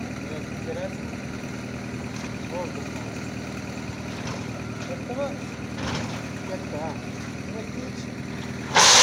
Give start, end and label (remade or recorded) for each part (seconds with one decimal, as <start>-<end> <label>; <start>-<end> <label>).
0.0-9.0 recorded